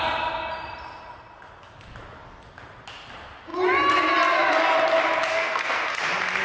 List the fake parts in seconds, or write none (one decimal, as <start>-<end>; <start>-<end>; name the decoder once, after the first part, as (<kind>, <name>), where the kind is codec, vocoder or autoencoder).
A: 5.3-6.0 (codec, SNAC)